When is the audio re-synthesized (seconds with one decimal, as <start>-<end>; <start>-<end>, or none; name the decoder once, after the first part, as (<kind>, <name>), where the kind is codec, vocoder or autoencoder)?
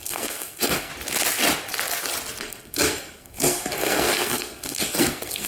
0.0-0.9 (codec, SNAC); 2.4-5.5